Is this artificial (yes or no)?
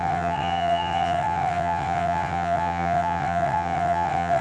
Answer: yes